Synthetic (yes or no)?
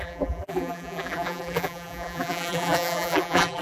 yes